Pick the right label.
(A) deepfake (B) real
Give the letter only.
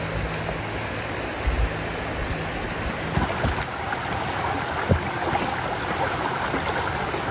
B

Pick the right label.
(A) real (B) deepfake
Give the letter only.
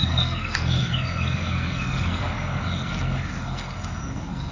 B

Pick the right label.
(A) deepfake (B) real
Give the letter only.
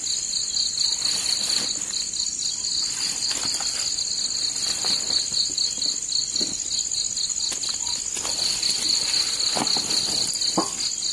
B